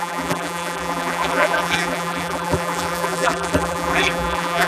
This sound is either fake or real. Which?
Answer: fake